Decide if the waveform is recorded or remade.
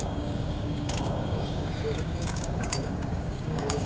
remade